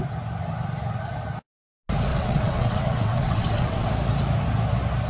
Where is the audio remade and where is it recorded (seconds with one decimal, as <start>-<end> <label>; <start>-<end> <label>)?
0.0-2.1 recorded; 2.1-3.9 remade; 3.9-5.1 recorded